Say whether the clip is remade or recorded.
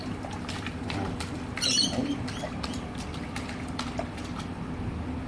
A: remade